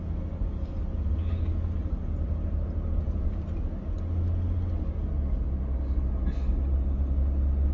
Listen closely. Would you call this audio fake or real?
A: real